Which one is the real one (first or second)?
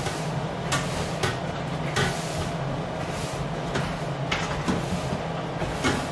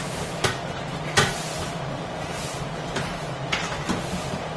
first